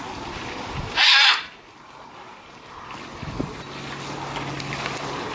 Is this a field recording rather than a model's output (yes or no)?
yes